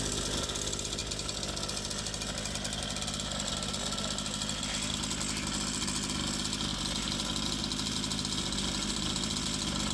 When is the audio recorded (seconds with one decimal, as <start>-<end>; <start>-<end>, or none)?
0.0-9.9